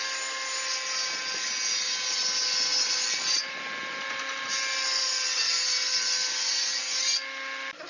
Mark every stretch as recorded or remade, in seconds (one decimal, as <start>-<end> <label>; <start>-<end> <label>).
0.0-7.9 recorded